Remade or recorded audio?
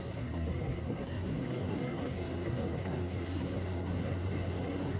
remade